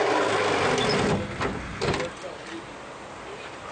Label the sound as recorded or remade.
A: recorded